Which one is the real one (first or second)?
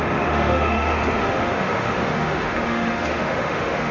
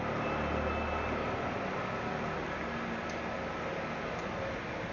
second